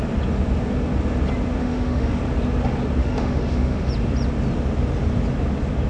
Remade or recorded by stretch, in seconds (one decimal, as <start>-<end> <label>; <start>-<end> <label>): 0.0-1.6 recorded; 1.6-2.2 remade; 2.2-3.0 recorded; 3.0-3.9 remade; 3.9-5.9 recorded